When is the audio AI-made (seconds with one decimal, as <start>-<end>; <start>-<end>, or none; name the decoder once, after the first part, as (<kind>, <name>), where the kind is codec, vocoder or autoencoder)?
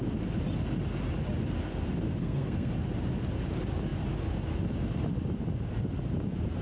2.2-2.7 (codec, SNAC)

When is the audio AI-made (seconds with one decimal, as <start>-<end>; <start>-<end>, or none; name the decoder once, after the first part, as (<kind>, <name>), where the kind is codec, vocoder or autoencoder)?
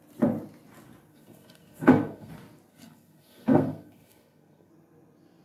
1.1-2.3 (codec, SNAC); 2.7-4.7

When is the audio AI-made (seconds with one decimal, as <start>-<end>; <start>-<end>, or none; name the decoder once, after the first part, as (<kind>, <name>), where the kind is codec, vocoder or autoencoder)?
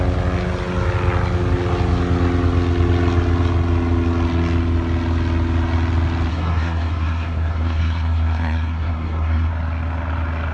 6.3-9.5 (codec, SNAC)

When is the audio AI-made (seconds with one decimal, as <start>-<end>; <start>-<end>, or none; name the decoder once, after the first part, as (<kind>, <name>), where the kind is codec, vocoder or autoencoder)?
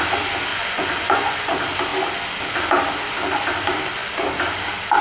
0.5-1.5 (vocoder, Vocos)